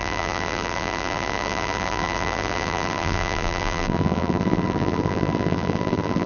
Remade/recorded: remade